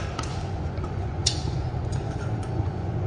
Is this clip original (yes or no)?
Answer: no